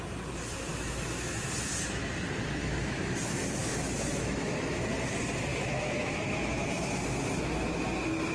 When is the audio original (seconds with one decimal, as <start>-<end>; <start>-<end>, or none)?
0.0-0.7; 1.5-2.6; 4.9-5.5; 7.0-8.3